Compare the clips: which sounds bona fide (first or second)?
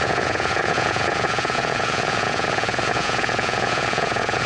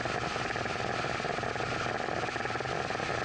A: second